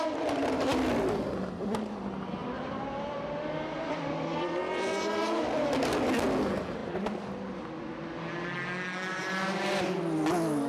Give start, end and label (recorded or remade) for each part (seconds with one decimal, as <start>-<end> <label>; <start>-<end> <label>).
0.0-2.4 recorded; 2.4-3.5 remade; 3.5-9.1 recorded; 9.1-10.0 remade; 10.0-10.7 recorded